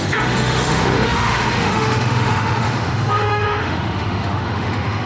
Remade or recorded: remade